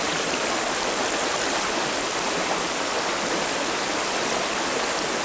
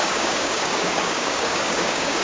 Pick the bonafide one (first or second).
first